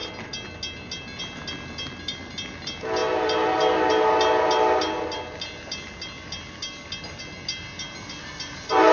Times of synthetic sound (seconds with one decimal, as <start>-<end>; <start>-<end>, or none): none